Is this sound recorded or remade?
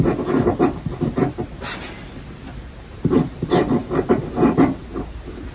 recorded